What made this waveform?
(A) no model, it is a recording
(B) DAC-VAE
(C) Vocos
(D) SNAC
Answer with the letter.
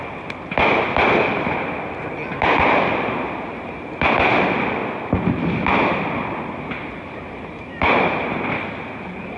A